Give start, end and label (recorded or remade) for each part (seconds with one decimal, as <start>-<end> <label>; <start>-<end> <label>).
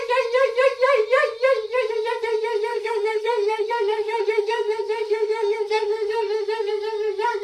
0.0-2.7 recorded; 2.7-6.7 remade; 6.7-7.4 recorded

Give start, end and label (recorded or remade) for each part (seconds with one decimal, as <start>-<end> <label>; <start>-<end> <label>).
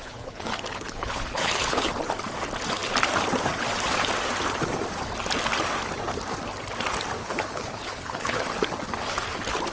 0.0-1.9 remade; 1.9-7.2 recorded; 7.2-8.4 remade; 8.4-9.7 recorded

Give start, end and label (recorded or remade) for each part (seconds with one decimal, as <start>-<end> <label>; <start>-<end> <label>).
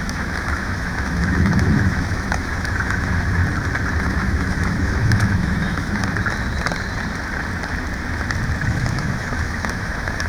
0.0-3.4 remade; 3.4-4.0 recorded; 4.0-6.0 remade; 6.0-8.7 recorded; 8.7-10.3 remade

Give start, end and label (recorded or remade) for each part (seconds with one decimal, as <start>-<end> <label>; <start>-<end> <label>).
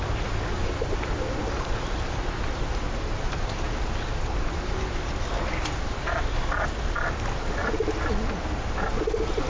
0.0-9.5 recorded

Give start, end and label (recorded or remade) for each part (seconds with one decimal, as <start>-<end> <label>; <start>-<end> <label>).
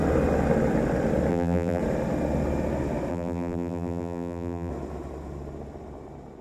0.0-1.3 recorded; 1.3-1.8 remade; 1.8-3.1 recorded; 3.1-4.7 remade; 4.7-6.4 recorded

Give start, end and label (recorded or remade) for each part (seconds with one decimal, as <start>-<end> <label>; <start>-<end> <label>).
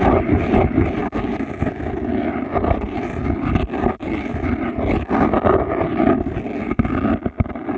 0.0-7.8 recorded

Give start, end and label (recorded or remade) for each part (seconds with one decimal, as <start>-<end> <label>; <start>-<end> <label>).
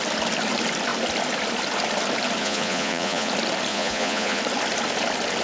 0.0-2.4 recorded; 2.4-3.3 remade; 3.3-3.7 recorded; 3.7-4.4 remade; 4.4-5.4 recorded